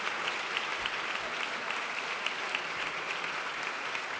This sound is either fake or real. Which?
real